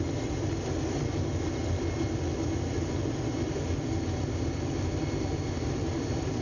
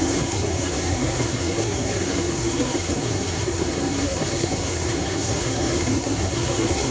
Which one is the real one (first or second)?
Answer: first